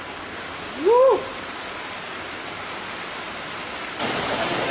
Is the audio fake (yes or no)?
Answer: no